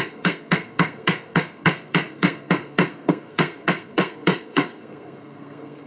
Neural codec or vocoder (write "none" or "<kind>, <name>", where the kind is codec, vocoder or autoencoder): codec, SNAC